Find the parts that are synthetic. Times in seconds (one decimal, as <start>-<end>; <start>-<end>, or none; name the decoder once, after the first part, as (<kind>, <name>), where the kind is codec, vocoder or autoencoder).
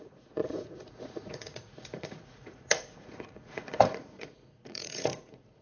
0.0-5.6 (vocoder, Vocos)